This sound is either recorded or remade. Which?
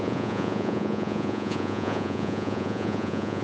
remade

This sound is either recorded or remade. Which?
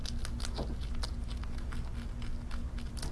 recorded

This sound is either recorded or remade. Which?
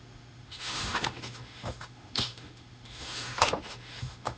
remade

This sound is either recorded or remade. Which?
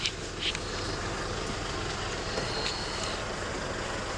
recorded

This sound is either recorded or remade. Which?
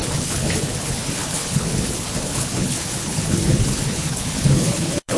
remade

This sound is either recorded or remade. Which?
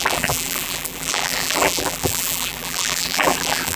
remade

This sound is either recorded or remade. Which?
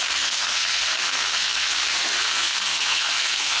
remade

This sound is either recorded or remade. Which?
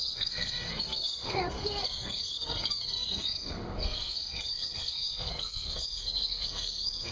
remade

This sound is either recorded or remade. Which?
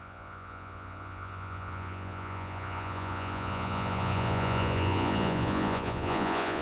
remade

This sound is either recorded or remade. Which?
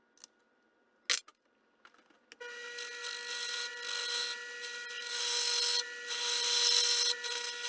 recorded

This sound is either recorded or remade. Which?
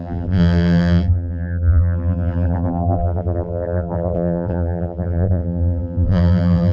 remade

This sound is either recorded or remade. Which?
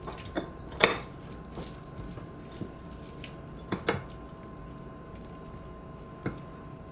recorded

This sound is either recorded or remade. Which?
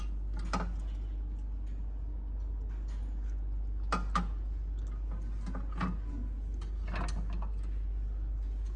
recorded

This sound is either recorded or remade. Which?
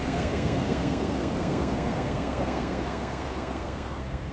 remade